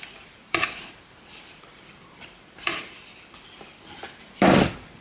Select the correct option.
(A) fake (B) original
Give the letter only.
A